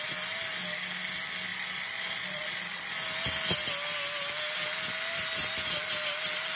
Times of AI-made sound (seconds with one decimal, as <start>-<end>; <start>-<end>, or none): 1.5-2.9